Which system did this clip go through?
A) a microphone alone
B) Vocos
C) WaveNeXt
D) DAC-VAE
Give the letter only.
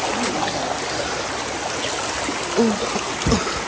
A